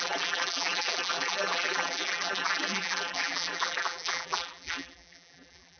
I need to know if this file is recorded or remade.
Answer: remade